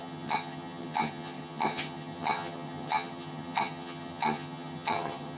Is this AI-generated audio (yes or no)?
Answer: yes